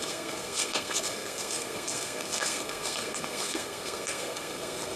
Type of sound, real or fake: fake